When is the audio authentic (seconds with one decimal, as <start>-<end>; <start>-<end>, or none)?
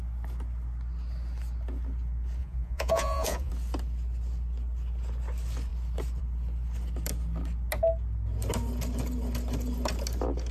0.0-2.4; 3.5-10.5